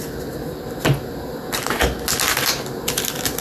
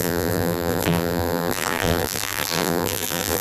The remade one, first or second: second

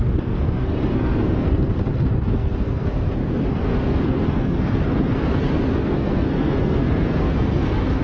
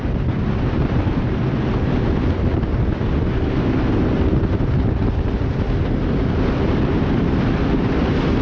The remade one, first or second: first